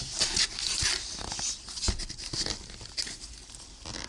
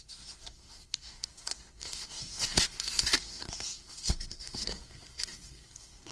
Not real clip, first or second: second